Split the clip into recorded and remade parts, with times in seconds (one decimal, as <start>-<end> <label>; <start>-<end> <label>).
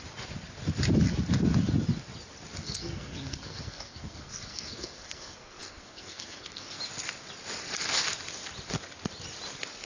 0.0-2.6 recorded; 2.6-6.8 remade; 6.8-9.8 recorded